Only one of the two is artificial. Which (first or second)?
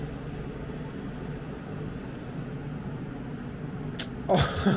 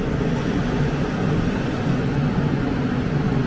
second